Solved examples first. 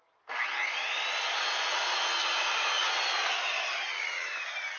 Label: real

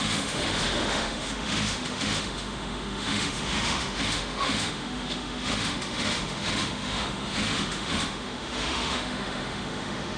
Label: fake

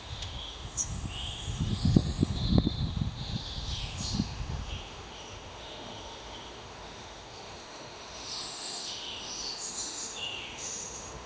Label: fake